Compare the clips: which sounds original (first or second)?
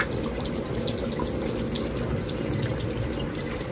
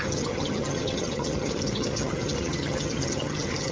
first